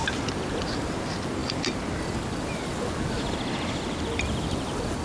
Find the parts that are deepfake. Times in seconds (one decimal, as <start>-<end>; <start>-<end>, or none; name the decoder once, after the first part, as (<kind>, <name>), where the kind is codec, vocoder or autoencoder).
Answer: none